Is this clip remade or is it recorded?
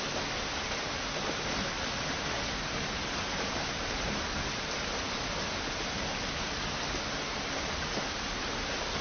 recorded